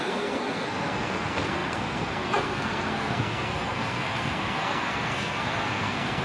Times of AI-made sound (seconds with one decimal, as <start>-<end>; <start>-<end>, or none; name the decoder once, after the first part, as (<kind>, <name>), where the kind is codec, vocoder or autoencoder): 0.0-6.2 (codec, SNAC)